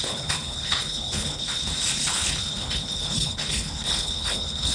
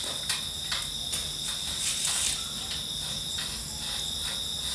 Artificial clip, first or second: first